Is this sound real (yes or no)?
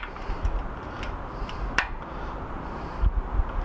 yes